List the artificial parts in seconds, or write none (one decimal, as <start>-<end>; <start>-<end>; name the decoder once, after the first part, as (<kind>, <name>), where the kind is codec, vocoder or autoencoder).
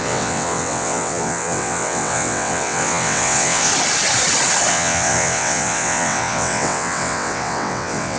0.0-3.7 (vocoder, WaveNeXt); 4.7-8.2